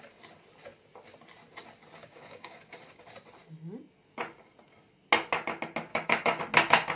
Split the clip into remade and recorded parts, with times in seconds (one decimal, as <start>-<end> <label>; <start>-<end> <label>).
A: 0.0-2.0 recorded; 2.0-3.0 remade; 3.0-5.9 recorded; 5.9-6.4 remade; 6.4-7.0 recorded